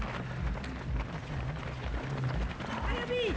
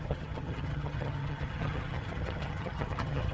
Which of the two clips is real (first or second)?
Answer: first